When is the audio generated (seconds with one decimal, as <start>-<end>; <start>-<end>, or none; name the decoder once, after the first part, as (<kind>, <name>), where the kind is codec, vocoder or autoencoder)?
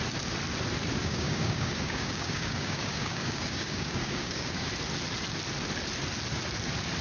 1.0-4.7 (codec, DAC)